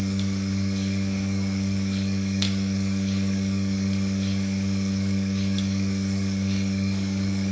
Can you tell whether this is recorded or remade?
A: remade